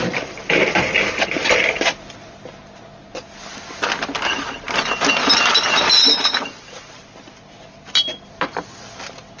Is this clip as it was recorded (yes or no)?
yes